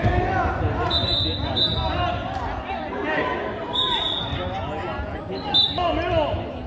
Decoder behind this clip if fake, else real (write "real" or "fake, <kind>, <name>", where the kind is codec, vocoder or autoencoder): real